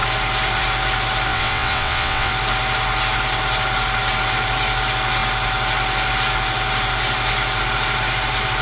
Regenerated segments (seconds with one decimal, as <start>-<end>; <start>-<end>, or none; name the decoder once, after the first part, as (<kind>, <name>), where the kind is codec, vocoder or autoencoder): 1.3-2.3 (vocoder, WaveNeXt)